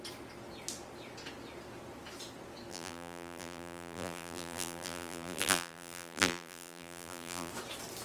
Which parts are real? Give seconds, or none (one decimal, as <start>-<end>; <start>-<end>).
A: 0.0-2.7; 7.5-8.0